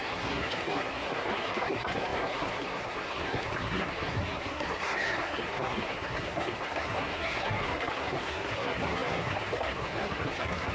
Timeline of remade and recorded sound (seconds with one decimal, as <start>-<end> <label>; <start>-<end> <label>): 0.0-10.7 remade